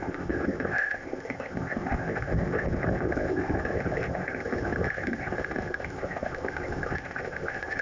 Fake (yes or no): yes